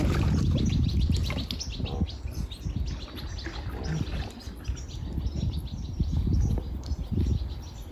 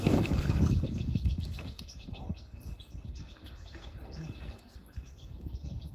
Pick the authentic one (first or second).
first